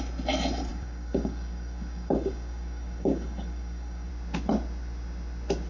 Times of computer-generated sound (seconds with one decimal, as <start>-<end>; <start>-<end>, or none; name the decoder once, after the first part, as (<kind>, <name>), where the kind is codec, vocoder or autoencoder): 0.7-4.1 (codec, DAC)